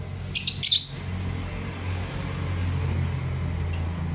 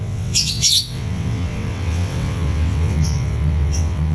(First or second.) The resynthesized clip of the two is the second